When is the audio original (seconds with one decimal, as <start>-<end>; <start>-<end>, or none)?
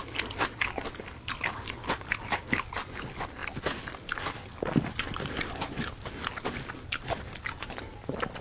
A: 0.0-8.4